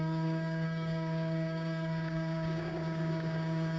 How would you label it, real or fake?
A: fake